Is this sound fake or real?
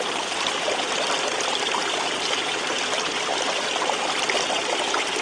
real